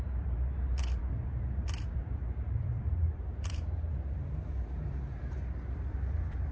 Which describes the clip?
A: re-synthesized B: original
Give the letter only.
A